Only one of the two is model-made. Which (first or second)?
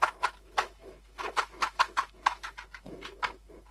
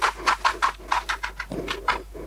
first